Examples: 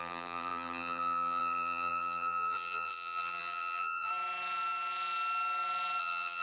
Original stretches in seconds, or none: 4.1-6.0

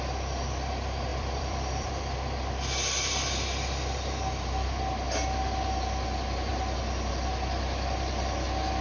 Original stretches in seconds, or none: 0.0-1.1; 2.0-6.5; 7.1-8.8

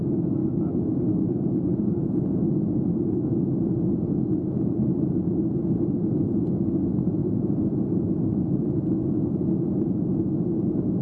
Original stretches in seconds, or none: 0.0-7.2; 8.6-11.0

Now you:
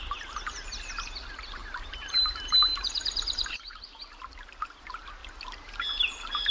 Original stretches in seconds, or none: 0.0-1.6; 2.3-2.7; 3.6-6.5